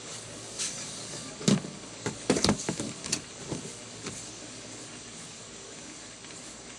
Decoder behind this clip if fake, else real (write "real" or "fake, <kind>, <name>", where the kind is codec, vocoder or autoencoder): fake, codec, DAC